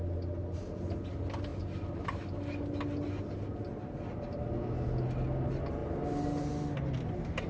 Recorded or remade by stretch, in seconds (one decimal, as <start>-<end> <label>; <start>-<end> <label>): 0.0-7.5 recorded

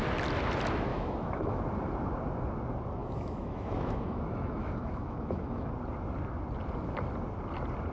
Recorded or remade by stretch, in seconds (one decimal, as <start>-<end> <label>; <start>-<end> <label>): 0.0-0.9 recorded; 0.9-1.6 remade; 1.6-3.0 recorded; 3.0-5.7 remade; 5.7-7.9 recorded

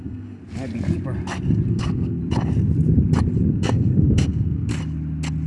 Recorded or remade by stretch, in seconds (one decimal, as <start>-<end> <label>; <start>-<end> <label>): 0.0-0.4 remade; 0.4-1.7 recorded; 1.7-2.2 remade; 2.2-3.5 recorded; 3.5-4.7 remade; 4.7-5.5 recorded

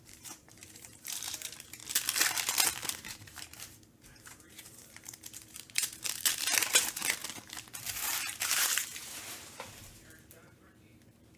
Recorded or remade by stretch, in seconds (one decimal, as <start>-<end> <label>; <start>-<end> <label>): 0.0-1.8 remade; 1.8-2.9 recorded; 2.9-7.2 remade; 7.2-7.9 recorded; 7.9-11.4 remade

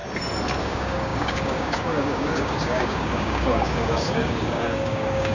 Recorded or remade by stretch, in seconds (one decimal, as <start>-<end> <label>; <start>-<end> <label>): 0.0-0.6 recorded; 0.6-5.3 remade

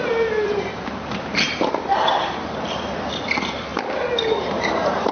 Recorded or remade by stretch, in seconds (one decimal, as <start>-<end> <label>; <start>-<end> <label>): 0.0-3.7 remade; 3.7-4.4 recorded; 4.4-5.1 remade

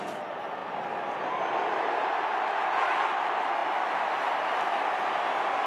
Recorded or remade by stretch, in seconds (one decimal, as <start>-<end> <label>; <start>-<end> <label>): 0.0-5.7 recorded